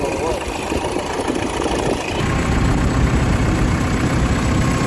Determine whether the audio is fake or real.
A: real